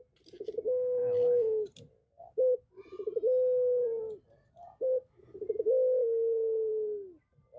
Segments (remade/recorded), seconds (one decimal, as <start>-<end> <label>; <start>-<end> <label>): 0.0-7.6 recorded